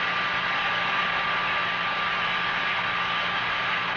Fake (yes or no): no